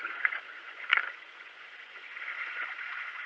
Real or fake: fake